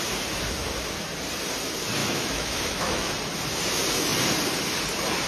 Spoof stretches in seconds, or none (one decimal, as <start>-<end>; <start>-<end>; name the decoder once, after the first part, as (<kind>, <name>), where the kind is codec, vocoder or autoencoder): 2.0-3.1 (autoencoder, DAC-VAE)